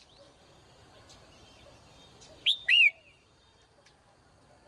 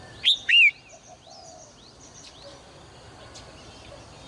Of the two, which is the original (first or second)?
second